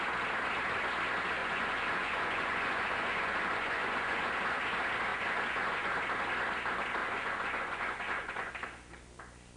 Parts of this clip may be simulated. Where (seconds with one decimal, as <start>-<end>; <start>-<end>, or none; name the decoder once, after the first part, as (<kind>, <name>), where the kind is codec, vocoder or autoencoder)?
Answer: 1.4-4.3 (vocoder, Vocos); 5.1-5.9; 7.0-8.5